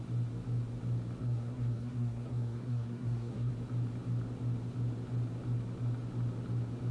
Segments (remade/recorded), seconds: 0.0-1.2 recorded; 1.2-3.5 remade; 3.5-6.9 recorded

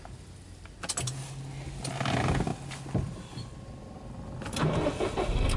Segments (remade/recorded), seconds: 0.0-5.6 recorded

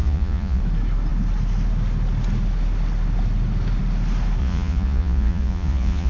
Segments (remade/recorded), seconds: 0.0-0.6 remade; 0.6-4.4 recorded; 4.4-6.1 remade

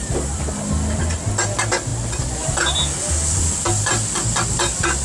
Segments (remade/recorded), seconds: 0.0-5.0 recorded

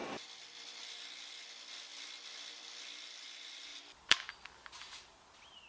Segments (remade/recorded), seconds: 0.0-0.8 remade; 0.8-1.9 recorded; 1.9-3.2 remade; 3.2-3.7 recorded; 3.7-4.3 remade; 4.3-5.7 recorded

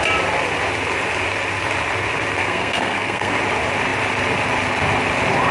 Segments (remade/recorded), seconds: 0.0-2.4 recorded; 2.4-3.3 remade; 3.3-5.5 recorded